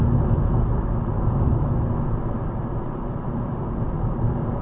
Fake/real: real